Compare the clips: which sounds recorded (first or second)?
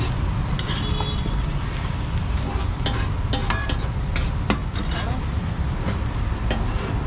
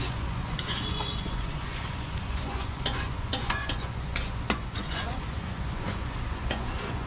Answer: first